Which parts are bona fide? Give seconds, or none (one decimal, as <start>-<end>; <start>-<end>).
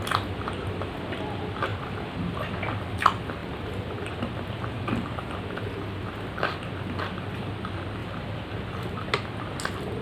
0.0-3.4; 5.8-8.0; 9.1-10.0